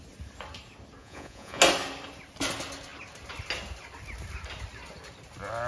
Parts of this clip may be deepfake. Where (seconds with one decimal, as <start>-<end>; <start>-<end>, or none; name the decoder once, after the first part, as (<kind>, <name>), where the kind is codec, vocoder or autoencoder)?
1.0-1.6 (vocoder, Vocos)